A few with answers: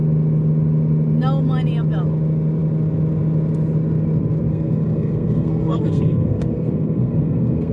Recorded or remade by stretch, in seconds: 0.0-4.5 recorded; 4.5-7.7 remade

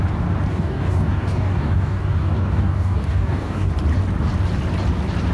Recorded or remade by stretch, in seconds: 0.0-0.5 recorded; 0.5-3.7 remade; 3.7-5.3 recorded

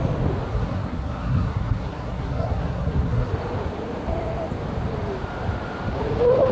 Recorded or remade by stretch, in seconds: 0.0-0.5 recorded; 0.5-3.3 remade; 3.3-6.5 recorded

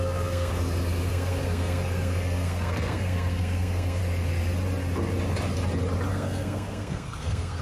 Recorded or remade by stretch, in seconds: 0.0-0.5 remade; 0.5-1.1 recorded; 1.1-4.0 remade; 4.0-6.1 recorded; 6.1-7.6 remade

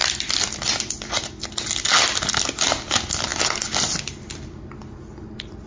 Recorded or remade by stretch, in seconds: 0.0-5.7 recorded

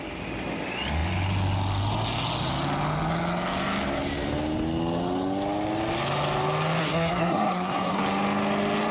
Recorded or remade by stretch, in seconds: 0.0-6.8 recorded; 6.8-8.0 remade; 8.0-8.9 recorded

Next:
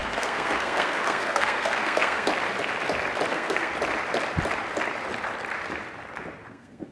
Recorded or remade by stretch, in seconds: 0.0-2.3 remade; 2.3-3.3 recorded; 3.3-3.7 remade; 3.7-6.5 recorded; 6.5-6.9 remade